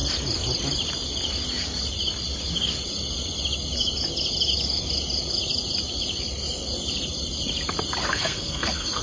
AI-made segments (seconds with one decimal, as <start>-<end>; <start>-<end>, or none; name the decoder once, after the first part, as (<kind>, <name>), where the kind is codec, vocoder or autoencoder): 8.1-9.0 (codec, SNAC)